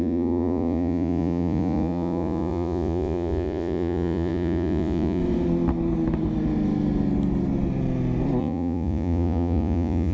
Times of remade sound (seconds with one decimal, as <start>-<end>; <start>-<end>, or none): 0.0-5.2; 8.4-10.1